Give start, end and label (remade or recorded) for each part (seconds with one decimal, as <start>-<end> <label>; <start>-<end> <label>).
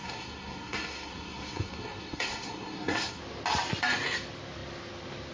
0.0-3.2 remade; 3.2-5.3 recorded